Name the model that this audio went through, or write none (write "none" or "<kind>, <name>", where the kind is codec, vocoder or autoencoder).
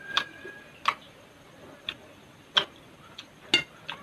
none